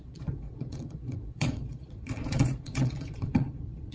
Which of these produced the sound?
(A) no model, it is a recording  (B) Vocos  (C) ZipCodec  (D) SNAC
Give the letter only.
B